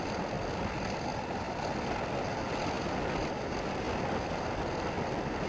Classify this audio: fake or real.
real